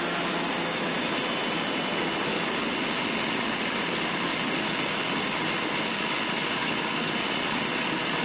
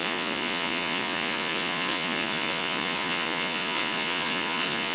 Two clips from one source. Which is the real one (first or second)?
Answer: first